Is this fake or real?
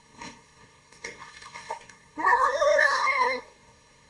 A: fake